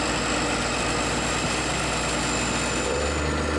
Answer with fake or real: real